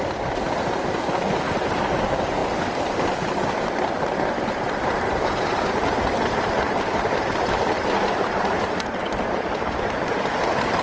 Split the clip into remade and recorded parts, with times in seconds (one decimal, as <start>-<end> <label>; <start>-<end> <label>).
0.0-10.8 recorded